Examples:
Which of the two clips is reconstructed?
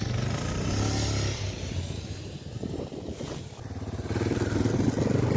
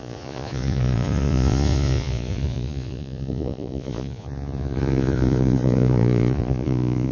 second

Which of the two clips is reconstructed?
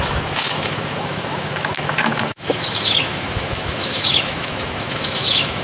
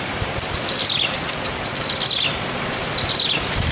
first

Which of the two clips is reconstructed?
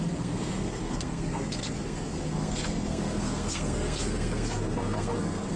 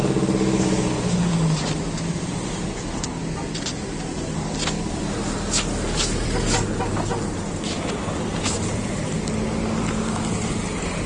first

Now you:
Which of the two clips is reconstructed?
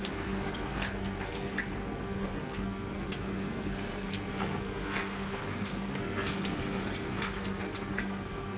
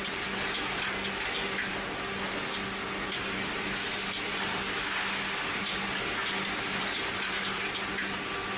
first